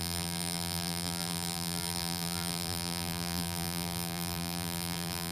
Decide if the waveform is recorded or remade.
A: remade